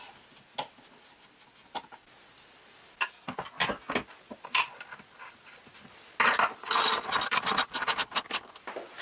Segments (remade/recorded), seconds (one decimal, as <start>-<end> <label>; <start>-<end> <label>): 0.0-9.0 recorded